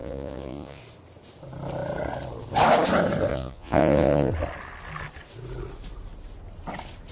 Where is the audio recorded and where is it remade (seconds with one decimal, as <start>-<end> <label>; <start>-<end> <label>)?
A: 0.0-0.8 remade; 0.8-3.3 recorded; 3.3-4.3 remade; 4.3-7.1 recorded